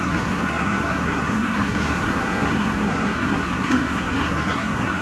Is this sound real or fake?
fake